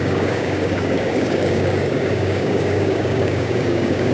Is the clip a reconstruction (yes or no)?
yes